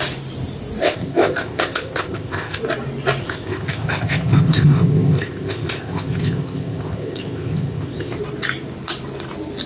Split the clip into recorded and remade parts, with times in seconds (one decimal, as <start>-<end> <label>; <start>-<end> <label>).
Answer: 0.0-0.8 recorded; 0.8-2.6 remade; 2.6-3.2 recorded; 3.2-8.2 remade; 8.2-9.7 recorded